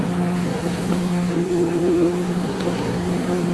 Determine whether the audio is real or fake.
fake